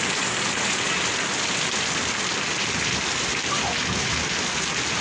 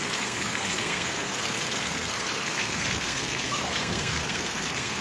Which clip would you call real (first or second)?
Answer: first